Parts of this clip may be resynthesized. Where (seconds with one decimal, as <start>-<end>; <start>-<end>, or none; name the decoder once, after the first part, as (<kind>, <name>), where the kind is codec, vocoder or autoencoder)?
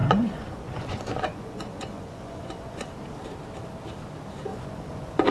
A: 0.0-2.9 (vocoder, Vocos); 4.5-5.3